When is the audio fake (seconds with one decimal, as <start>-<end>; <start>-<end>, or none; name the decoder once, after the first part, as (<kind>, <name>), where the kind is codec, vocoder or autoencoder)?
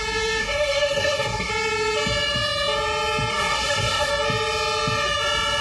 0.4-1.5 (codec, SNAC); 3.3-4.1